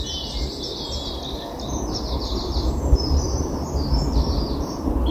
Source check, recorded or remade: remade